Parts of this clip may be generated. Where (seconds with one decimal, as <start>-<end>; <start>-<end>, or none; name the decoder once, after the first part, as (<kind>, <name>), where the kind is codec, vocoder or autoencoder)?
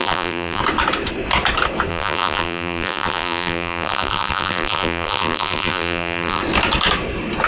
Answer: 0.0-0.6 (vocoder, BigVGAN v2); 1.9-6.4